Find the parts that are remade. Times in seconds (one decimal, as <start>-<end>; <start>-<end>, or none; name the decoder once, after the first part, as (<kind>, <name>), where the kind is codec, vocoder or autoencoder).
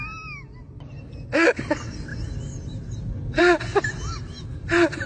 none